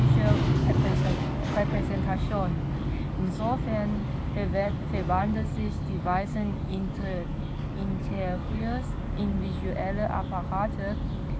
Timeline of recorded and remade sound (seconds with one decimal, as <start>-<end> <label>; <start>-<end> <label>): 0.0-0.6 recorded; 0.6-3.4 remade; 3.4-4.0 recorded; 4.0-4.7 remade; 4.7-5.2 recorded; 5.2-9.2 remade; 9.2-11.4 recorded